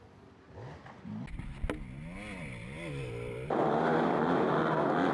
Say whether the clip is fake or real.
real